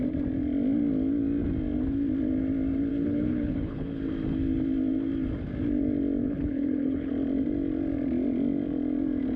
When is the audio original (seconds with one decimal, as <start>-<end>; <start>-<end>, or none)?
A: 0.0-2.9; 4.0-6.2; 7.1-9.4